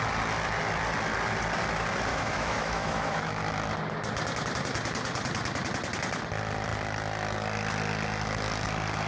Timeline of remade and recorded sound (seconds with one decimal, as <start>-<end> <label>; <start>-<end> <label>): 0.0-2.1 recorded; 2.1-3.4 remade; 3.4-9.1 recorded